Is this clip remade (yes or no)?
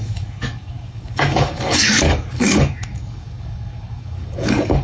yes